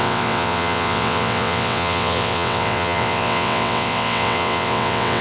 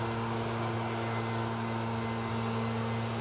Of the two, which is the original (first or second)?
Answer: second